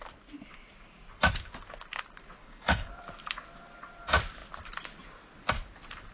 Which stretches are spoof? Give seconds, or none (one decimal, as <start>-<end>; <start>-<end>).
2.4-2.9